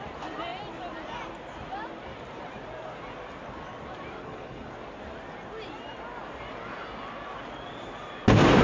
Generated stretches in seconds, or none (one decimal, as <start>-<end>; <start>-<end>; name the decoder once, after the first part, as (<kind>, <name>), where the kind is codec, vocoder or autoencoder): 4.2-4.7 (codec, HILCodec)